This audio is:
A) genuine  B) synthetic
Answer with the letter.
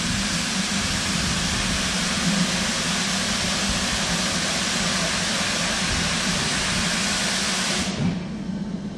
A